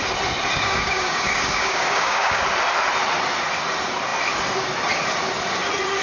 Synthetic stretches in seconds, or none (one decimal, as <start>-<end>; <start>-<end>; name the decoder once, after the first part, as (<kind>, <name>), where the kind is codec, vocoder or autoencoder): 0.5-2.4 (codec, DAC)